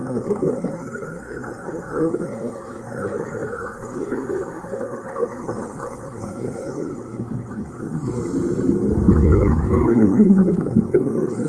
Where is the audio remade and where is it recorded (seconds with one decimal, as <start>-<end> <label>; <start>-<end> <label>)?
0.0-8.2 remade; 8.2-9.1 recorded; 9.1-11.5 remade